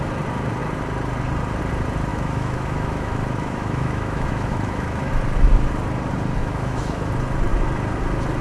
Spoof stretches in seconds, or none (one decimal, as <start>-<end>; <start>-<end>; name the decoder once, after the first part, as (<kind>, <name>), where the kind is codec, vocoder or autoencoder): 2.1-5.1 (autoencoder, DAC-VAE); 6.4-7.1